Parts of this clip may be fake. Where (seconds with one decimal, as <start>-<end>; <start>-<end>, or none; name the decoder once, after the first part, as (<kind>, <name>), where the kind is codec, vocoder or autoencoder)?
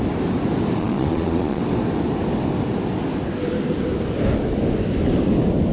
0.8-1.6 (vocoder, Vocos)